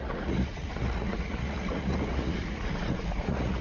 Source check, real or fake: fake